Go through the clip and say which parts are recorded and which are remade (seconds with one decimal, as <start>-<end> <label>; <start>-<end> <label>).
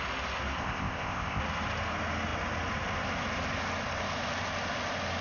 0.0-0.6 recorded; 0.6-1.4 remade; 1.4-5.2 recorded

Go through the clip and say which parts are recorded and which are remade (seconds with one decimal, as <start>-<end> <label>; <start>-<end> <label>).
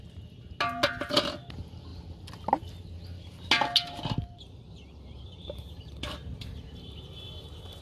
0.0-7.8 recorded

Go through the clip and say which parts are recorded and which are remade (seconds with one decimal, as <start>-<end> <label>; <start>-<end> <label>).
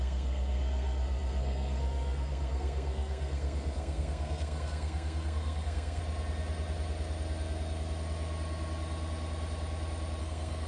0.0-6.0 remade; 6.0-10.2 recorded; 10.2-10.7 remade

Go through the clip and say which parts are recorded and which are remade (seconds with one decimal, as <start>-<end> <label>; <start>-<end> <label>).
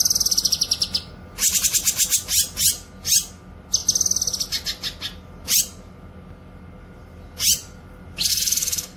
0.0-8.3 recorded; 8.3-9.0 remade